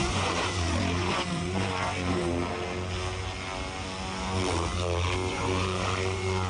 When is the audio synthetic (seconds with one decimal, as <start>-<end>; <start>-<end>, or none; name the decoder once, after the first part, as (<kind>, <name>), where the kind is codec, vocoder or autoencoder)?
0.0-2.2 (vocoder, Vocos); 5.3-6.5